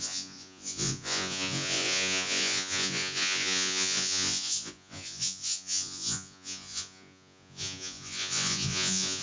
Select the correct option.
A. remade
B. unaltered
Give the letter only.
A